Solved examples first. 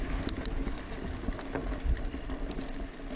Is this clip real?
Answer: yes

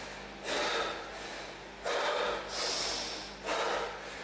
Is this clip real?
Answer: yes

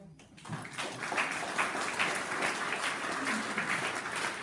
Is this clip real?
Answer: yes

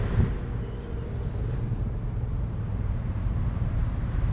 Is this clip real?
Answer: no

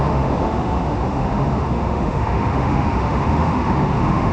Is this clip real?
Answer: no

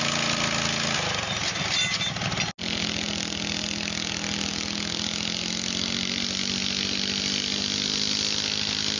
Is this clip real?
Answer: yes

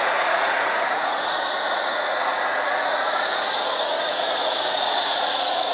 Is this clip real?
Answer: no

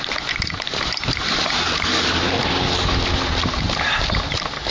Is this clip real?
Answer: yes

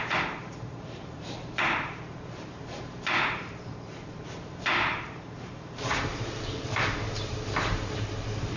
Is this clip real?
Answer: no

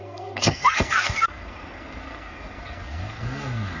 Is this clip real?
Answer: no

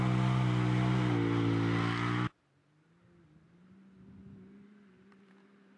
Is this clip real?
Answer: yes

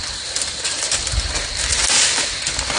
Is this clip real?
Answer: yes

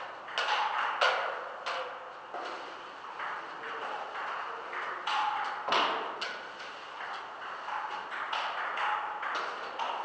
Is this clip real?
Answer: yes